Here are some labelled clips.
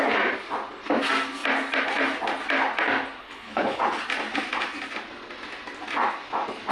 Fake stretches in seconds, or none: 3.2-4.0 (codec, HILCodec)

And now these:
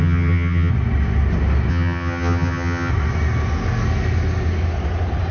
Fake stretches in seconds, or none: 0.0-0.7 (vocoder, HiFi-GAN); 1.7-2.9

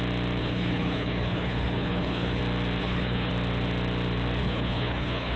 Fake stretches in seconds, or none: 0.4-2.4 (codec, HILCodec); 2.8-3.3; 4.4-5.4

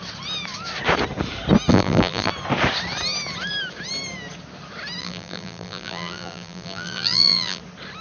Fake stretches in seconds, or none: 1.7-2.3 (vocoder, BigVGAN v2); 5.0-7.6

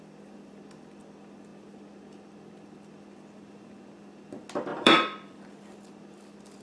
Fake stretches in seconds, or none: 4.7-5.5 (vocoder, BigVGAN v2)

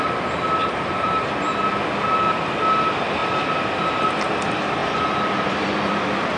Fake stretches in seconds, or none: 0.6-1.3 (vocoder, BigVGAN v2); 4.8-6.4

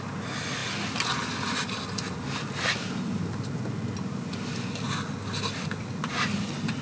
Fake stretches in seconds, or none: none